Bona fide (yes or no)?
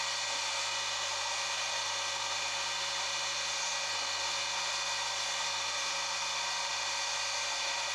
yes